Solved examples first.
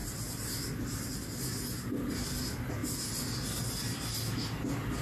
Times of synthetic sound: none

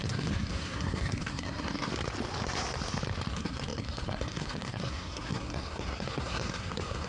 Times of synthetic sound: 0.0-1.9 (codec, SNAC); 3.3-7.1

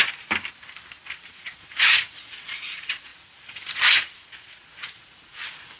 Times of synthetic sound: 1.3-5.8 (vocoder, Vocos)

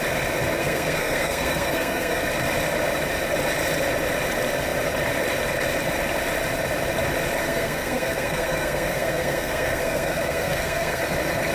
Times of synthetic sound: 0.6-2.2 (codec, SNAC); 7.4-11.0

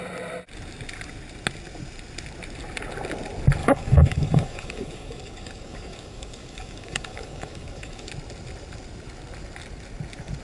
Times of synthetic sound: 3.6-8.1 (codec, DAC)

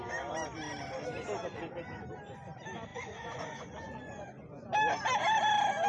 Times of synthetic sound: 2.9-4.4 (vocoder, Vocos)